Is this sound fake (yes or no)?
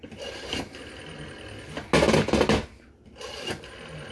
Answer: no